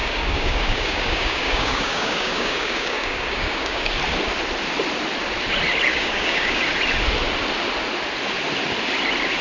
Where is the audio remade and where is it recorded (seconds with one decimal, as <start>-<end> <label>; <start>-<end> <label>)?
0.0-3.9 remade; 3.9-5.9 recorded; 5.9-6.6 remade; 6.6-9.4 recorded